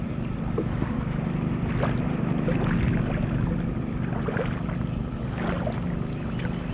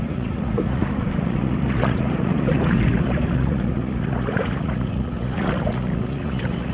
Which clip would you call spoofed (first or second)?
second